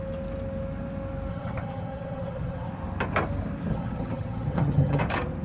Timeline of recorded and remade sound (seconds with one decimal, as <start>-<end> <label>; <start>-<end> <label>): 0.0-1.3 recorded; 1.3-2.7 remade; 2.7-3.7 recorded; 3.7-5.0 remade; 5.0-5.4 recorded